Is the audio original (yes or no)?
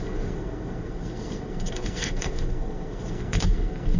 no